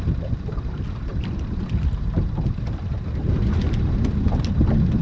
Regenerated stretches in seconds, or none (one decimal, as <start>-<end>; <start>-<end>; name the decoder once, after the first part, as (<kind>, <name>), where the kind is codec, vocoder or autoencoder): none